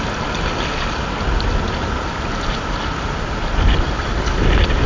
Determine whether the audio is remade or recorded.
recorded